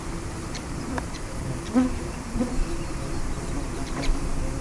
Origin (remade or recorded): remade